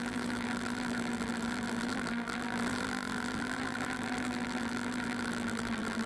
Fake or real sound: fake